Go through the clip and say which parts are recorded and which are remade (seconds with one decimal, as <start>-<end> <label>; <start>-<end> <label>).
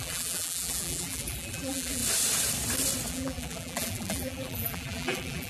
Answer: 0.0-2.0 remade; 2.0-3.1 recorded; 3.1-5.5 remade